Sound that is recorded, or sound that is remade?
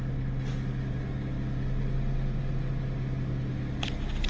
recorded